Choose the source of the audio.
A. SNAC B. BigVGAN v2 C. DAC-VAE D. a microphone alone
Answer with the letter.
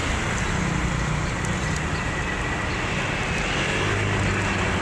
D